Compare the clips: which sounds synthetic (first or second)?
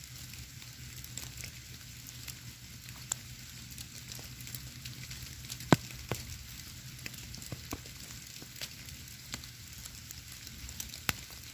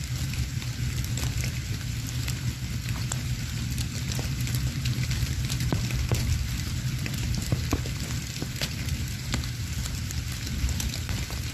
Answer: second